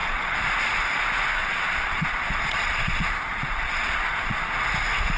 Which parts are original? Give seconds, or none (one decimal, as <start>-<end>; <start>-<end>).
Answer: 0.5-1.4; 4.5-5.2